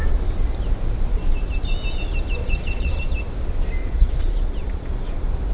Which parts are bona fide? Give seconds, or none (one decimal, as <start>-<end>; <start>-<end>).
0.0-2.4; 3.0-3.8; 4.9-5.5